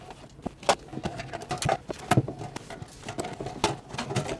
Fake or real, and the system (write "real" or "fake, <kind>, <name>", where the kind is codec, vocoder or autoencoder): real